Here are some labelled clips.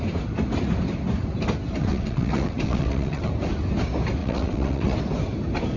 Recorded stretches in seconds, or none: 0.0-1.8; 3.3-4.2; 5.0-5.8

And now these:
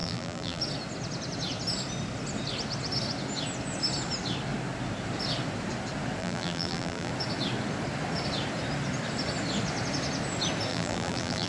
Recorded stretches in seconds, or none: 0.6-6.2; 7.1-10.7

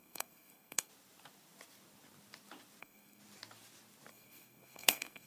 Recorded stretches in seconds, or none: 0.9-2.8; 3.2-4.1

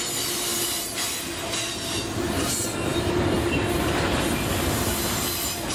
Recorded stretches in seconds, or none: 0.0-5.7

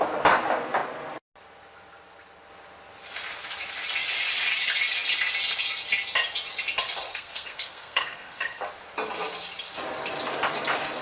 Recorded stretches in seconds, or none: 0.0-7.1; 8.6-11.0

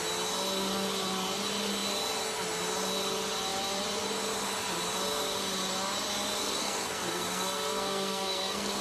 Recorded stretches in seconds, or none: 0.0-6.4